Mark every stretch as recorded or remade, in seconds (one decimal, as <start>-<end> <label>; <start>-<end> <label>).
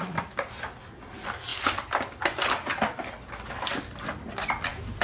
0.0-5.0 recorded